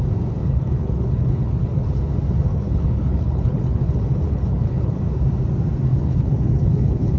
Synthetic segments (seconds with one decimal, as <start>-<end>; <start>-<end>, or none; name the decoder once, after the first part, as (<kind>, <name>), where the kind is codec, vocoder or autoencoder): 0.4-2.0 (codec, HILCodec); 2.5-5.0; 5.9-7.2